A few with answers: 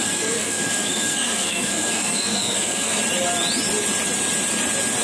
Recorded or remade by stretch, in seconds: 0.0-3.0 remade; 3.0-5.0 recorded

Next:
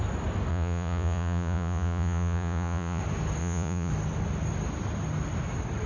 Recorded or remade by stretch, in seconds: 0.0-0.5 recorded; 0.5-3.0 remade; 3.0-3.4 recorded; 3.4-3.9 remade; 3.9-5.9 recorded